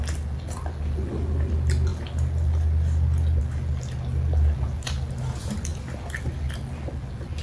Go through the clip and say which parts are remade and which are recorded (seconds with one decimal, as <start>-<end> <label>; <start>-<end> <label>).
0.0-7.4 recorded